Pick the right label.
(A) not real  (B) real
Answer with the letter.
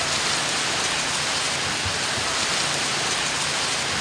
B